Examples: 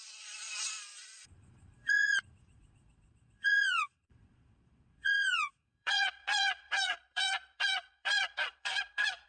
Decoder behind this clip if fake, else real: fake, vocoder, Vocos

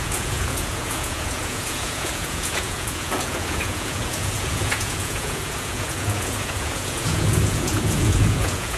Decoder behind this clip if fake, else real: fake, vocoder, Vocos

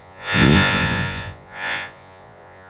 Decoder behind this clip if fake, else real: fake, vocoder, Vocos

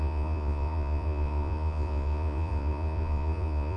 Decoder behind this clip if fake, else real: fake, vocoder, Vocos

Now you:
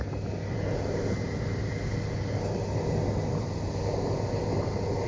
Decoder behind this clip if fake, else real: real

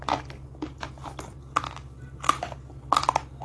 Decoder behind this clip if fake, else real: real